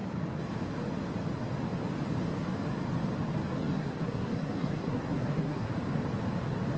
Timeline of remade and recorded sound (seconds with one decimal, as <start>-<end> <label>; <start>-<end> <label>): 0.0-3.6 recorded; 3.6-5.7 remade; 5.7-6.8 recorded